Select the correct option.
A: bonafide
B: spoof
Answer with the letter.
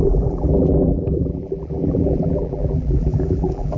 B